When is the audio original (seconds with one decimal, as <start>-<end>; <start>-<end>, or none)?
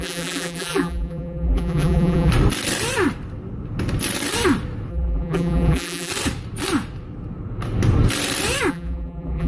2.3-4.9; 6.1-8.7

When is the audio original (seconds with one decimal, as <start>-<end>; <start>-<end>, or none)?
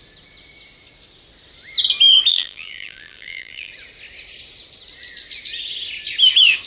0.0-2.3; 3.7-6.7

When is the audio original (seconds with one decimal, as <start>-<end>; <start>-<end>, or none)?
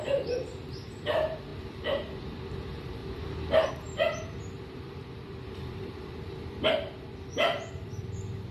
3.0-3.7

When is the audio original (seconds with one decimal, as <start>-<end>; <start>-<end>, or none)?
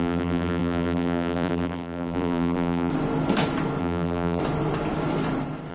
2.9-3.8; 4.4-5.7